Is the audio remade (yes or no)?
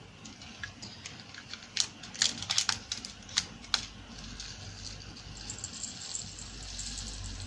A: no